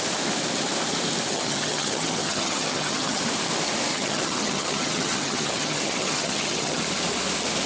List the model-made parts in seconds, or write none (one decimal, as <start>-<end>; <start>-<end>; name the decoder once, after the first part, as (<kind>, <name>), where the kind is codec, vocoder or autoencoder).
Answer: 1.3-3.2 (vocoder, HiFi-GAN); 3.9-6.8